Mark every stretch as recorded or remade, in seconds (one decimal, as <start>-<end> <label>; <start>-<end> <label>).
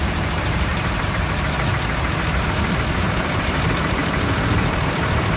0.0-5.4 remade